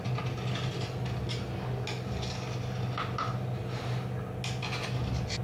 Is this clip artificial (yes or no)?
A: no